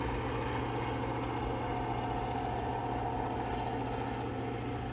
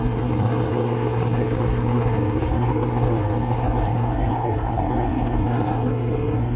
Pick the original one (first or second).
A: first